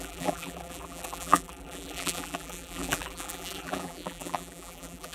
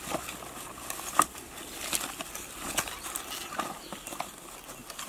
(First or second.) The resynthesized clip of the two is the first